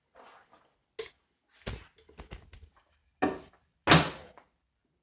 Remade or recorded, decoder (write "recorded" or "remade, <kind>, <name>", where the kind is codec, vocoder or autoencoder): recorded